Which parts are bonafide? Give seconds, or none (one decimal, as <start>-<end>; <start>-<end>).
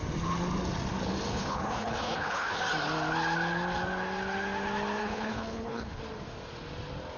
0.0-1.3; 2.6-5.0; 6.0-7.2